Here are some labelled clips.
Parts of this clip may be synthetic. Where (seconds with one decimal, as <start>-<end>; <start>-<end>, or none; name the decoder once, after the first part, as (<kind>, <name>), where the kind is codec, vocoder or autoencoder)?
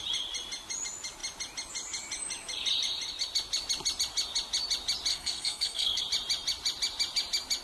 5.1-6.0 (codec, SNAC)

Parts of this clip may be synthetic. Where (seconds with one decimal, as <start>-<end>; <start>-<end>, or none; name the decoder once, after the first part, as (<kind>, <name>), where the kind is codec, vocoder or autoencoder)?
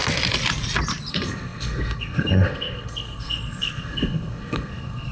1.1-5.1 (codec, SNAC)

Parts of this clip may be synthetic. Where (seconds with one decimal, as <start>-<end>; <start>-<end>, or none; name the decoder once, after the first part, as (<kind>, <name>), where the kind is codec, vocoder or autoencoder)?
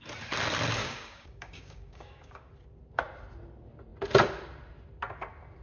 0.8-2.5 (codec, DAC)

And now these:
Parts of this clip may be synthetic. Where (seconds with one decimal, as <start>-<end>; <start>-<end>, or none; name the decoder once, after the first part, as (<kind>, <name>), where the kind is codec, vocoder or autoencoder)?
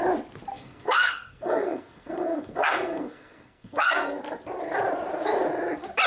0.5-4.2 (codec, SNAC)